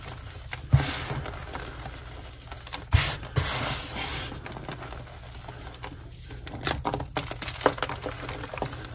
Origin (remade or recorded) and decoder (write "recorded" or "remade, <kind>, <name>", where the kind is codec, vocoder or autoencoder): recorded